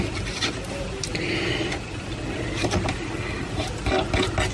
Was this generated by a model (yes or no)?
no